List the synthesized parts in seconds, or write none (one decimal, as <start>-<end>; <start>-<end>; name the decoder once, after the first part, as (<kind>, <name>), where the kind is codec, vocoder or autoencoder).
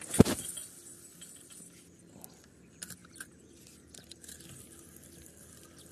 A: 3.0-4.6 (vocoder, BigVGAN v2)